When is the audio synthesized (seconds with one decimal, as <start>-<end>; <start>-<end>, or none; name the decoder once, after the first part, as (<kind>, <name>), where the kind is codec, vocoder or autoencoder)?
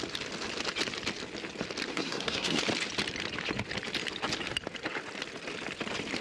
1.9-2.6 (codec, SNAC)